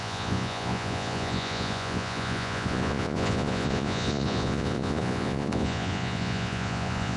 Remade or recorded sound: remade